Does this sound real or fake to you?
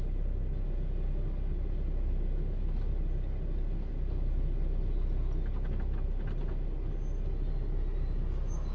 real